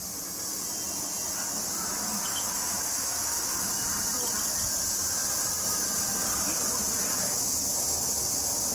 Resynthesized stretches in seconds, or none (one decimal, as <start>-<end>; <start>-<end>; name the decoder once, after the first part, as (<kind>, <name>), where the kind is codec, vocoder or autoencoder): 2.3-3.7 (autoencoder, DAC-VAE)

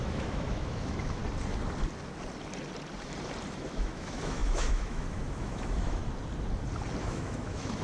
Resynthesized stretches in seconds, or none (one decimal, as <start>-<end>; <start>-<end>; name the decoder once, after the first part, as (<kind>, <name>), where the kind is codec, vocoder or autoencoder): 0.0-1.2 (autoencoder, DAC-VAE); 3.5-6.0; 7.0-7.8

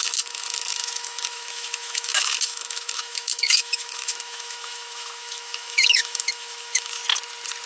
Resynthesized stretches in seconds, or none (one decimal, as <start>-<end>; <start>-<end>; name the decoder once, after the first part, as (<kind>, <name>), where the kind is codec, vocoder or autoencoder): 0.0-7.0 (autoencoder, DAC-VAE)

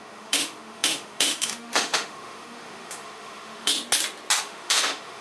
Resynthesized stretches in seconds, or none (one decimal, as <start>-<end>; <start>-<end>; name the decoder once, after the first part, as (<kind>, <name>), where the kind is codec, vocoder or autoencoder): 0.0-3.7 (autoencoder, DAC-VAE); 4.4-5.2

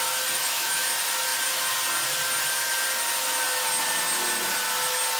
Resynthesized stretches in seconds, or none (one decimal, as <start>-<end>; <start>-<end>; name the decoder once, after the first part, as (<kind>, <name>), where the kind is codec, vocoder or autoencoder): 0.4-0.9 (autoencoder, DAC-VAE)

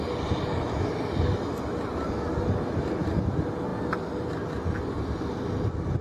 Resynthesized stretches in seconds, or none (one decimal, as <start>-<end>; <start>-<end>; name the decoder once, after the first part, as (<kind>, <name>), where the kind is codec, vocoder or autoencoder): none

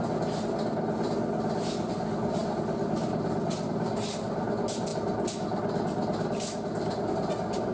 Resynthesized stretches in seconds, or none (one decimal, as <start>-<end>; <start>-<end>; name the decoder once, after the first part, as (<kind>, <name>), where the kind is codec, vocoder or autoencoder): none

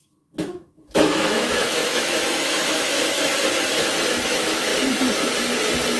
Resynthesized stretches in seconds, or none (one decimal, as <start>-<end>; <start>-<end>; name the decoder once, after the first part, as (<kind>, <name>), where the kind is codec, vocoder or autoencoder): 0.0-3.3 (autoencoder, DAC-VAE); 4.1-4.7